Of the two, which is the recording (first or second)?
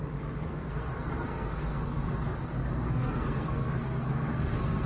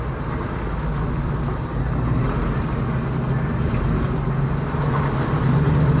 second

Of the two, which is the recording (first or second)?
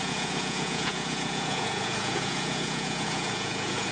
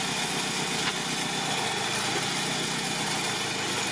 second